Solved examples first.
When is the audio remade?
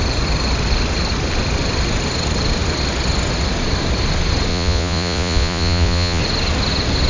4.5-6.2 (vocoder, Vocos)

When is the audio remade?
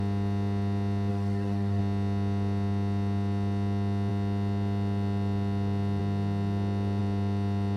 1.1-1.8 (codec, DAC)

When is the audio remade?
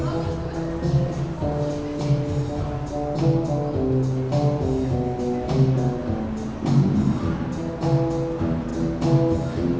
none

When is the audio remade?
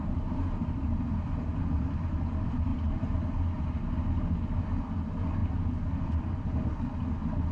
none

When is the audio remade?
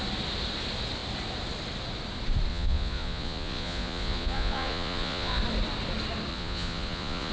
2.5-5.4 (vocoder, Vocos); 6.3-7.3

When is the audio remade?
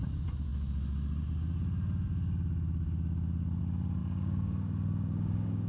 4.0-5.7 (codec, DAC)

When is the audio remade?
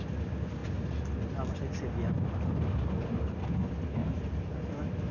4.0-5.1 (vocoder, BigVGAN v2)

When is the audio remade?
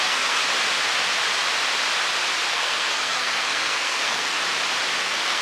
0.0-0.4 (codec, SNAC); 2.5-4.4; 5.0-5.4